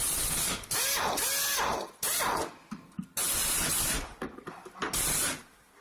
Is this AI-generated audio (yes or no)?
no